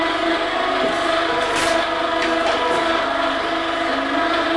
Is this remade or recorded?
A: recorded